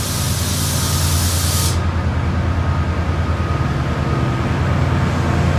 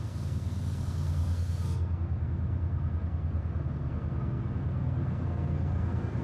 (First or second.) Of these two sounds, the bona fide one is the first